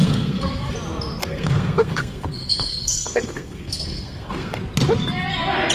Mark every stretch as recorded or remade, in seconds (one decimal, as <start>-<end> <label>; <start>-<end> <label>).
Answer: 0.0-0.7 remade; 0.7-1.2 recorded; 1.2-4.6 remade; 4.6-5.7 recorded